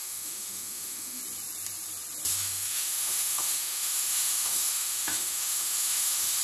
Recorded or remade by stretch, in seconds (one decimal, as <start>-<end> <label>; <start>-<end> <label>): 0.0-1.2 remade; 1.2-2.3 recorded; 2.3-6.4 remade